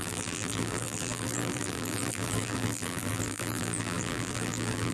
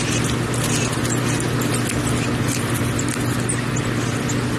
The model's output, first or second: first